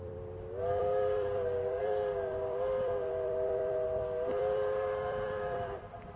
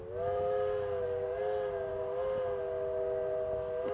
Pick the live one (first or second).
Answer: second